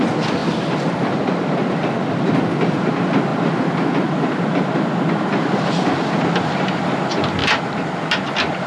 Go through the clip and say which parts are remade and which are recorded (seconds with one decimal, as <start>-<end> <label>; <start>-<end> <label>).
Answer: 0.0-8.7 recorded